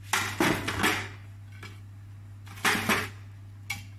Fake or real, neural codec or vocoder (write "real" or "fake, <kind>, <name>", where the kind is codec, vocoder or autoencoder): real